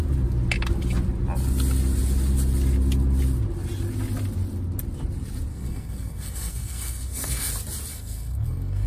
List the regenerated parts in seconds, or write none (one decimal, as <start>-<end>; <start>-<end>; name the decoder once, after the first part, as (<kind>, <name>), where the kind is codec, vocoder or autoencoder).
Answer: 5.5-7.5 (codec, SNAC); 7.9-8.9